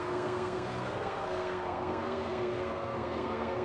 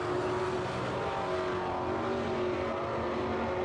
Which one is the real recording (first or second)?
second